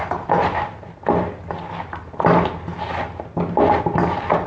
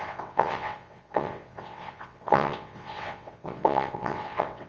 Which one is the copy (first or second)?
second